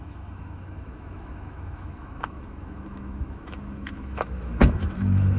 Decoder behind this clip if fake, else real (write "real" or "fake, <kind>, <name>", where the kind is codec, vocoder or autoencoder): fake, autoencoder, DAC-VAE